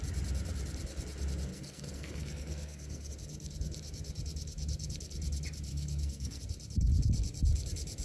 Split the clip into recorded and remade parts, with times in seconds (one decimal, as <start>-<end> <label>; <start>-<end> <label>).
0.0-1.5 recorded; 1.5-3.1 remade; 3.1-5.7 recorded; 5.7-6.4 remade; 6.4-8.0 recorded